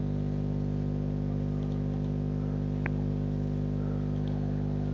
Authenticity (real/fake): real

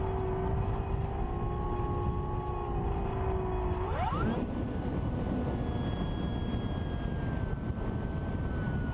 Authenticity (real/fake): real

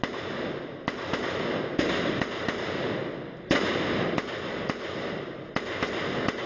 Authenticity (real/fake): real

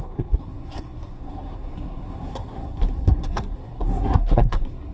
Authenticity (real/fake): fake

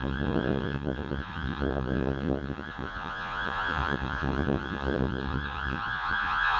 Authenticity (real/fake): fake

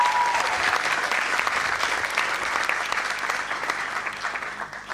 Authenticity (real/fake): real